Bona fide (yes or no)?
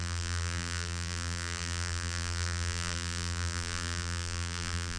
no